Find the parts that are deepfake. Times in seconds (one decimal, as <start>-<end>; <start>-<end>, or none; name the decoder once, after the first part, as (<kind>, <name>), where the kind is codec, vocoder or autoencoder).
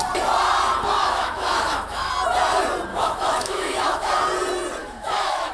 1.0-2.1 (autoencoder, DAC-VAE); 2.9-4.1; 4.8-5.5